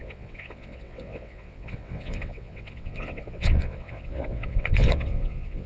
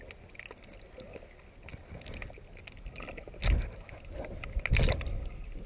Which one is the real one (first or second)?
second